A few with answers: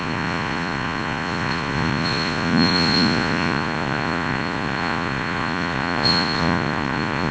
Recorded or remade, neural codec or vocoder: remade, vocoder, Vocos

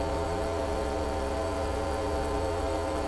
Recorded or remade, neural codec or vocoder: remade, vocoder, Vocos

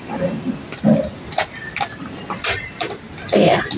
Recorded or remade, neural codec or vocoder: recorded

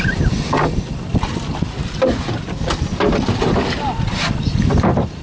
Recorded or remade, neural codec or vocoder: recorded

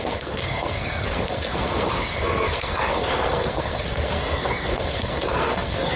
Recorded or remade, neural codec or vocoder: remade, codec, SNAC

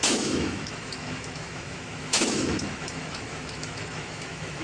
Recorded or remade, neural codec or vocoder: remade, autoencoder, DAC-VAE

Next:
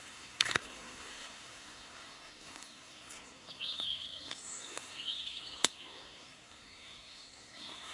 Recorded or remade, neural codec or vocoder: remade, codec, SNAC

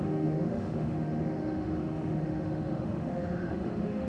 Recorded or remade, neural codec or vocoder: remade, autoencoder, DAC-VAE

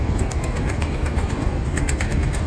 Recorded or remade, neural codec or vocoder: remade, codec, DAC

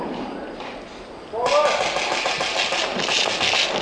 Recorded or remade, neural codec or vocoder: recorded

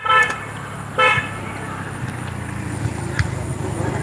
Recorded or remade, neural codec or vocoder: recorded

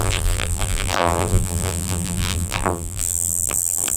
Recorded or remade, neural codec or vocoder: remade, vocoder, BigVGAN v2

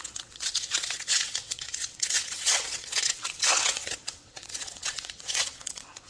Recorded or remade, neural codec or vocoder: remade, vocoder, WaveNeXt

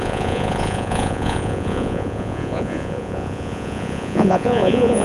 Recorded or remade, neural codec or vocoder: remade, vocoder, Vocos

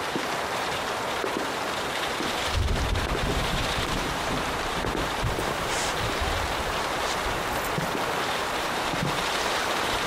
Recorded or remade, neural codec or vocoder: remade, vocoder, BigVGAN v2